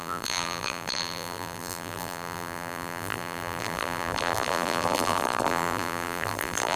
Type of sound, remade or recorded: remade